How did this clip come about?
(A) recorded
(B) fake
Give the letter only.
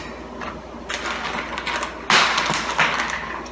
A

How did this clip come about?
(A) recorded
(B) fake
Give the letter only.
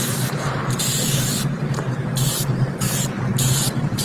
B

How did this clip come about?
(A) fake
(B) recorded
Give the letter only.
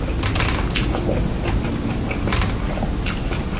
B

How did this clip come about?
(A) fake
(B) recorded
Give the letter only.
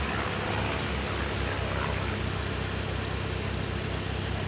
B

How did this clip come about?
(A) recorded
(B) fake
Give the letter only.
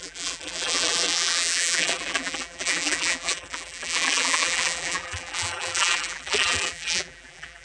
B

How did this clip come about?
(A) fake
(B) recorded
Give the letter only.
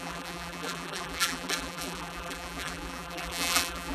A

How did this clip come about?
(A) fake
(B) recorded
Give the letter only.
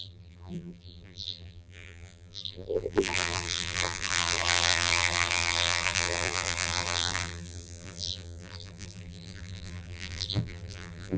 A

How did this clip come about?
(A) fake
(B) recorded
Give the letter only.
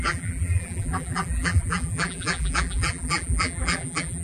A